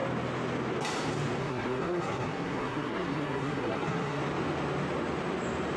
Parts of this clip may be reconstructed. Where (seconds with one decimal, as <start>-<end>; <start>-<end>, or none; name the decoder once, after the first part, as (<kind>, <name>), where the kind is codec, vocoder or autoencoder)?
1.4-4.2 (codec, SNAC)